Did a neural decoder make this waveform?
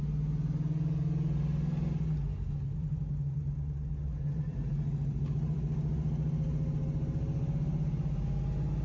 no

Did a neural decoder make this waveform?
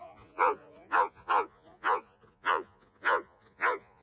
yes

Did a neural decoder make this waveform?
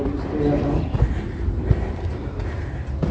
no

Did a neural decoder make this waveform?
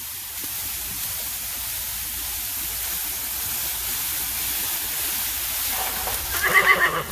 no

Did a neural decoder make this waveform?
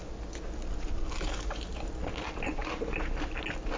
no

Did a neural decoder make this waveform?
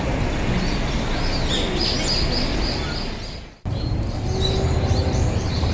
no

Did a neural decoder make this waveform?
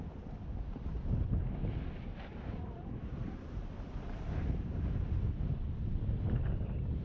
no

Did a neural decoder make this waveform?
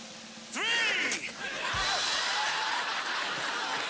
no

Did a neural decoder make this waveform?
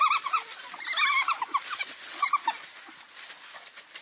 no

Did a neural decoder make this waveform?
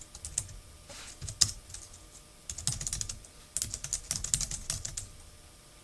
no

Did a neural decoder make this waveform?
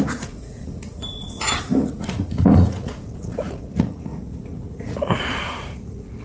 yes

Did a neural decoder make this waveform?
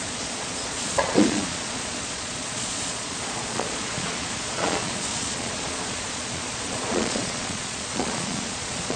yes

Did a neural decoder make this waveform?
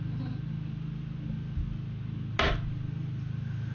no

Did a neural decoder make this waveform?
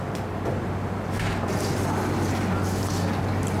no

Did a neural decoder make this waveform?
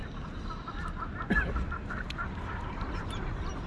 no